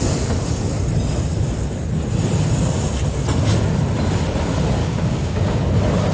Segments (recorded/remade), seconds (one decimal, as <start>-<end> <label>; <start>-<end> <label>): 0.0-4.8 recorded; 4.8-5.6 remade; 5.6-6.1 recorded